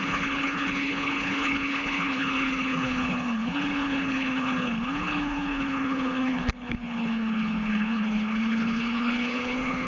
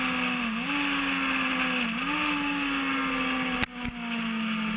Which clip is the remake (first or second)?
first